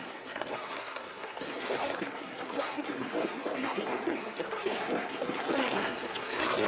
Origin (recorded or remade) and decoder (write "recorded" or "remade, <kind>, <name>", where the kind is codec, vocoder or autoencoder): remade, codec, SNAC